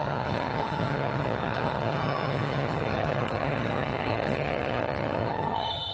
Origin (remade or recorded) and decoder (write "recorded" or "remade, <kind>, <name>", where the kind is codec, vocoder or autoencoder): remade, vocoder, HiFi-GAN